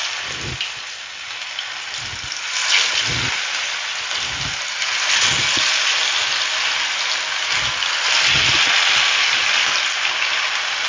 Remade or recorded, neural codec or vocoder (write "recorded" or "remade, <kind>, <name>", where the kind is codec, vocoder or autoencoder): recorded